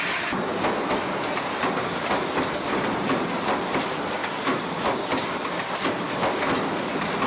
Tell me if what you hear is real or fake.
real